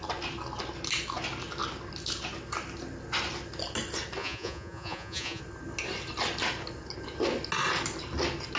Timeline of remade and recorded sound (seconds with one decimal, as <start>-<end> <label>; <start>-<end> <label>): 0.0-4.2 recorded; 4.2-5.4 remade; 5.4-8.6 recorded